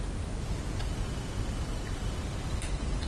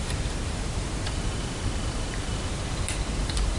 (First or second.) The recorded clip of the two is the first